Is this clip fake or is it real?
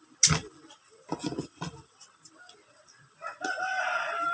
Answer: real